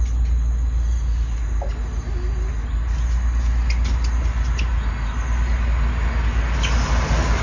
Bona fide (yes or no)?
yes